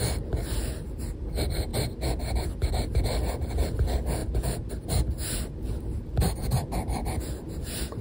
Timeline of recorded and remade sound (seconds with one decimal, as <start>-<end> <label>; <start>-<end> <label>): 0.0-8.0 recorded